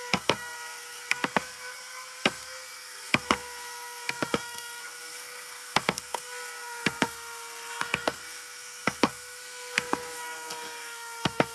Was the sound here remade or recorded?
remade